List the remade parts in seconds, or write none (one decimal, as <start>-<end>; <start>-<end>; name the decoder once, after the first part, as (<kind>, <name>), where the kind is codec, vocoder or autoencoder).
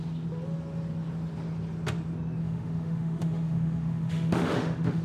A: 2.4-5.0 (autoencoder, DAC-VAE)